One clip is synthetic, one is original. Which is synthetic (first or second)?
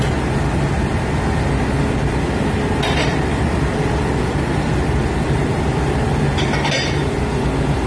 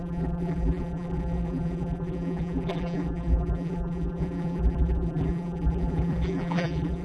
second